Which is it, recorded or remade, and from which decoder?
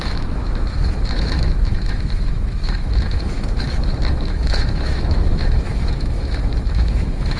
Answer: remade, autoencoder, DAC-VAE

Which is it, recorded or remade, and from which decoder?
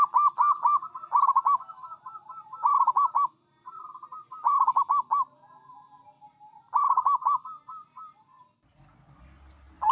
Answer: recorded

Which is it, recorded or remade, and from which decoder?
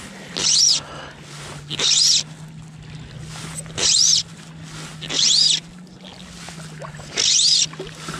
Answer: recorded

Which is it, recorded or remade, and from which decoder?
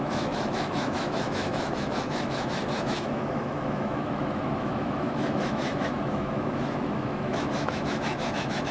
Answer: remade, autoencoder, DAC-VAE